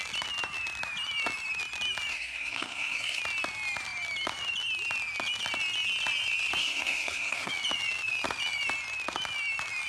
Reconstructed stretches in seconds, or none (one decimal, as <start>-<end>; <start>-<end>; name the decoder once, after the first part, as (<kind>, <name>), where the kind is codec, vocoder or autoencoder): 2.1-3.2 (codec, SNAC); 6.6-7.5